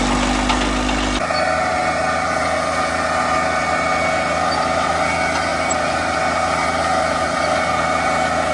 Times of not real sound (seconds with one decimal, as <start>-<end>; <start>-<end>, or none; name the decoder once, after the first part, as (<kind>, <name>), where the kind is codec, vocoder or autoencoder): none